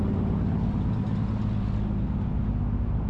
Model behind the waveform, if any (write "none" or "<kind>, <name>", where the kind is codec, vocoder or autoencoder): none